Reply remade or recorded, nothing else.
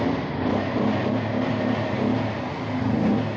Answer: recorded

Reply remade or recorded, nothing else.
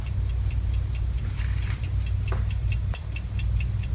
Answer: recorded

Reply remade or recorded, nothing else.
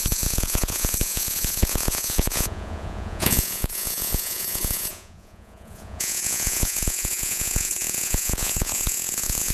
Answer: remade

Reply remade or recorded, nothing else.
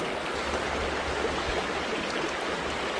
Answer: recorded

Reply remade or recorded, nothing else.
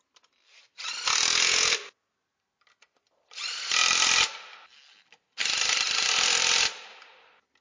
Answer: recorded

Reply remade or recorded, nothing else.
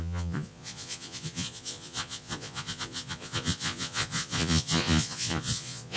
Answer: remade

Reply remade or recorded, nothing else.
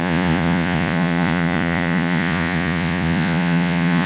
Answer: remade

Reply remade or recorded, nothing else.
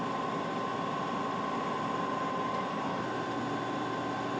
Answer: recorded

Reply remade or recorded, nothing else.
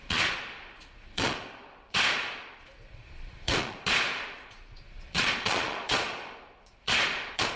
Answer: remade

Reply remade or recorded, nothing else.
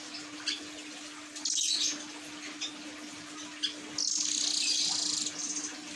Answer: recorded